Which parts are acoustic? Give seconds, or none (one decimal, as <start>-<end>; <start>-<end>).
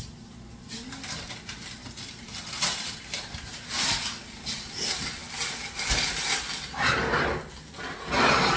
0.0-8.6